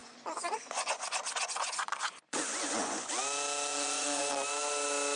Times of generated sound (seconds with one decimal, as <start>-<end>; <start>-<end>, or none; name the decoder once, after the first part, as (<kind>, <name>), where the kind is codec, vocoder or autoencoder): 0.0-3.1 (vocoder, Vocos); 3.7-4.2